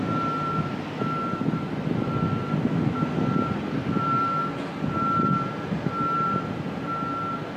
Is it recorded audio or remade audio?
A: recorded